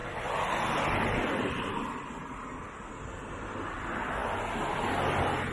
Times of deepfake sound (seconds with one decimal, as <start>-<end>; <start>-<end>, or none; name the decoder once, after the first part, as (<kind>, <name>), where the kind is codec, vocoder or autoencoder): none